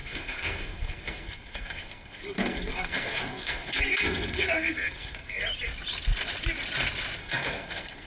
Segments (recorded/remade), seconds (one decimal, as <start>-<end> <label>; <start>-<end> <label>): 0.0-5.4 remade; 5.4-7.2 recorded; 7.2-8.1 remade